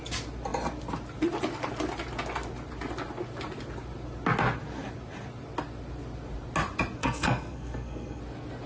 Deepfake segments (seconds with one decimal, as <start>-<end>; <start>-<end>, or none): 7.0-8.2